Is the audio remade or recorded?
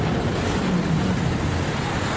remade